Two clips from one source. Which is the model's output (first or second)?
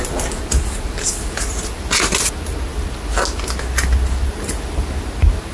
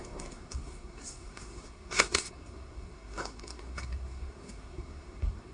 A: second